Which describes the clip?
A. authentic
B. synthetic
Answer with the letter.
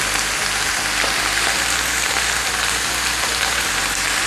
A